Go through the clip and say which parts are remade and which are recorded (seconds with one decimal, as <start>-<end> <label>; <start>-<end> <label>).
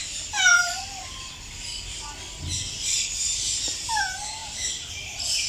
0.0-0.5 recorded; 0.5-3.8 remade; 3.8-4.4 recorded; 4.4-5.1 remade; 5.1-5.5 recorded